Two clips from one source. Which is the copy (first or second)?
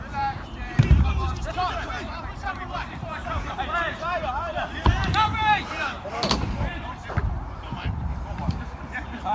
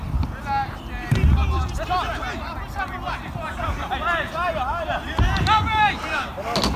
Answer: first